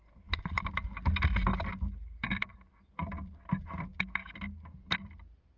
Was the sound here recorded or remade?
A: recorded